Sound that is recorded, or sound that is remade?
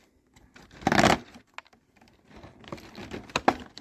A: recorded